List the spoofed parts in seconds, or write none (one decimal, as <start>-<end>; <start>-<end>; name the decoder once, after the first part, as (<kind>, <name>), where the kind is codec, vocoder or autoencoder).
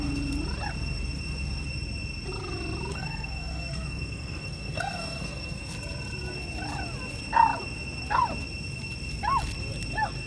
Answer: 2.9-5.7 (codec, SNAC)